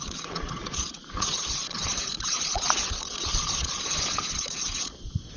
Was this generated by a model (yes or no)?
yes